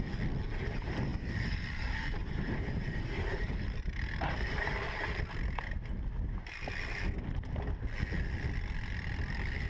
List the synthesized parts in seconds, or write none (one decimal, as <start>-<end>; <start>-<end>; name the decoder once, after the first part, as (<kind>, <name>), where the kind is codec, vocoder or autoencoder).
1.1-5.2 (vocoder, BigVGAN v2)